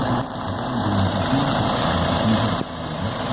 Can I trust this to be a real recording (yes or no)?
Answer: yes